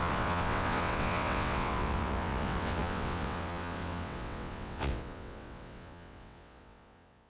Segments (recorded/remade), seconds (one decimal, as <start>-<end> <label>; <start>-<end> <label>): 0.0-7.3 remade